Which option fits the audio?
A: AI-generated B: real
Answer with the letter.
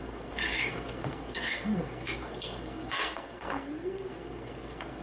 A